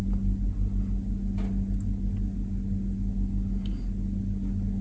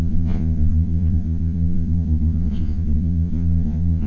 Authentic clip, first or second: first